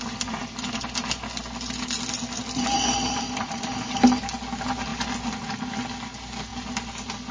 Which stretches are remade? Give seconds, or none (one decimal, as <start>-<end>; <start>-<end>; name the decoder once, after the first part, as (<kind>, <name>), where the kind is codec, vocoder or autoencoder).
none